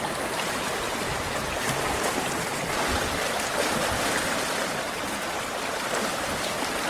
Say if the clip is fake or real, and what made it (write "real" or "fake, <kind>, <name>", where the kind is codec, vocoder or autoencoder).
fake, vocoder, BigVGAN v2